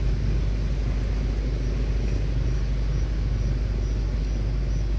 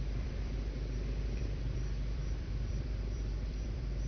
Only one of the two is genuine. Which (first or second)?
first